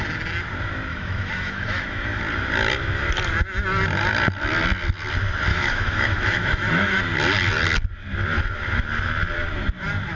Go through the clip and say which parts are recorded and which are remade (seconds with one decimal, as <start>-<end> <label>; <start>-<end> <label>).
0.0-0.9 recorded; 0.9-2.2 remade; 2.2-5.5 recorded; 5.5-7.0 remade; 7.0-10.2 recorded